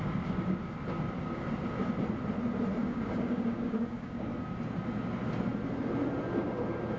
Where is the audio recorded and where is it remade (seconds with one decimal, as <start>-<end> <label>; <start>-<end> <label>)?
0.0-2.8 recorded; 2.8-4.3 remade; 4.3-7.0 recorded